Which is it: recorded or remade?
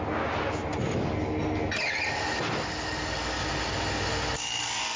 recorded